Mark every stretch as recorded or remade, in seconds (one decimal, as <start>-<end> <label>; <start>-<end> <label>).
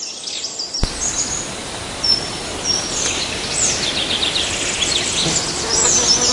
0.0-6.3 recorded